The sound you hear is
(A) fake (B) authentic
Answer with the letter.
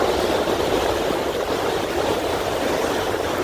B